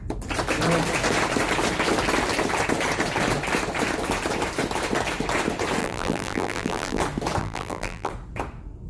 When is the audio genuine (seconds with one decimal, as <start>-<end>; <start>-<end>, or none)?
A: 0.0-5.8; 7.0-7.4; 8.1-8.9